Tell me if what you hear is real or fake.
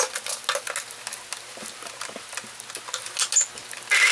real